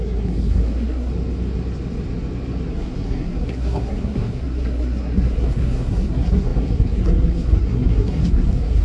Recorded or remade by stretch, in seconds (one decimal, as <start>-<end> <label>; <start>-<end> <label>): 0.0-1.1 remade; 1.1-2.7 recorded; 2.7-8.8 remade